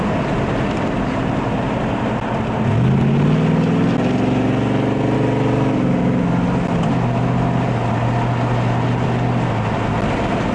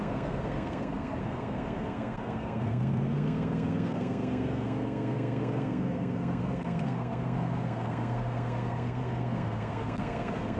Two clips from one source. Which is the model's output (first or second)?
second